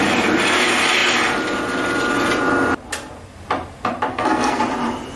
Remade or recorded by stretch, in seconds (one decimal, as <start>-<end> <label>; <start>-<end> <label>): 0.0-4.1 recorded; 4.1-4.6 remade; 4.6-5.2 recorded